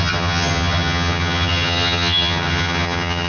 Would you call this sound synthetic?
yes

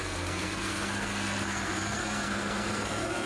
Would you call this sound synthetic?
yes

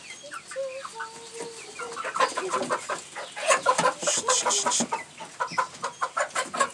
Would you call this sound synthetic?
no